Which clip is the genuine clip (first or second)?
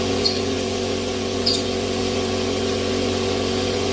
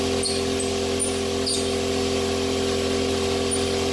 second